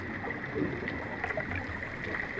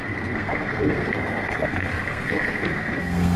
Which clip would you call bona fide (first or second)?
first